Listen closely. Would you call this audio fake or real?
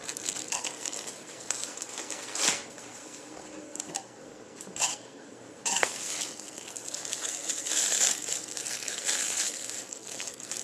fake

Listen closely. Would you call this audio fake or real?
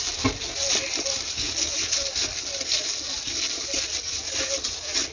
real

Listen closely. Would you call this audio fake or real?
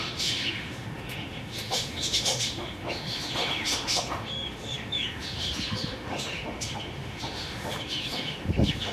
fake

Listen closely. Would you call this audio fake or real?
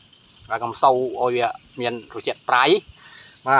real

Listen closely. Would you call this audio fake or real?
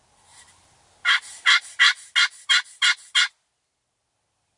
real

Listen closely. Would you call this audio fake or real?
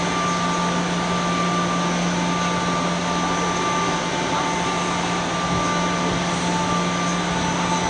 real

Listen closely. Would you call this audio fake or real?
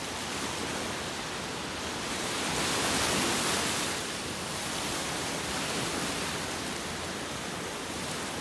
real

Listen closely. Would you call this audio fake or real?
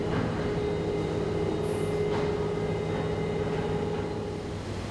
real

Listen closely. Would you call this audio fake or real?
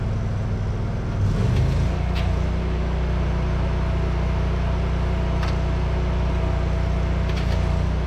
real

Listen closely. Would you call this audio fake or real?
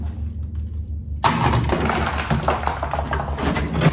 real